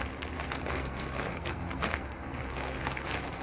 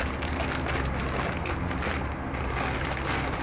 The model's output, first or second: first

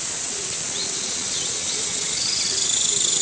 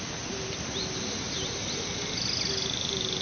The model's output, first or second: first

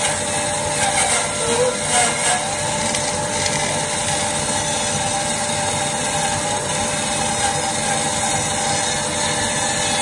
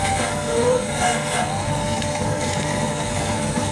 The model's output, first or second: second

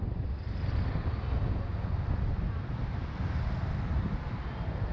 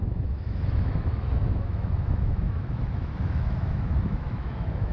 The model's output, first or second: second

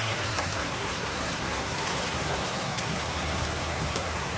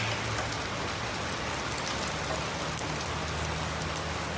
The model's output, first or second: first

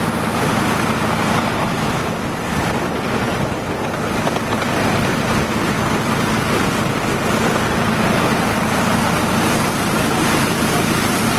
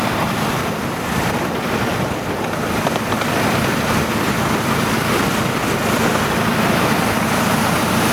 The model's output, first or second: second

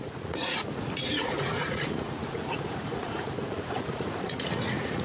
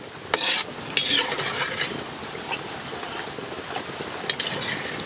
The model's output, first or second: first